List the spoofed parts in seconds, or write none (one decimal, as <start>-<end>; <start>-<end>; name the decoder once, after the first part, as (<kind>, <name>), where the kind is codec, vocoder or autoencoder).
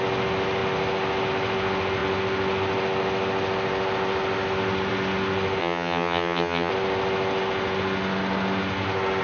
5.6-6.7 (vocoder, HiFi-GAN)